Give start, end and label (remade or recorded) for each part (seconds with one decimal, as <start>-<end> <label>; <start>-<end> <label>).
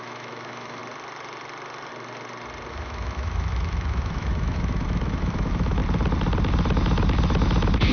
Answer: 0.0-0.8 remade; 0.8-2.7 recorded; 2.7-5.8 remade; 5.8-7.9 recorded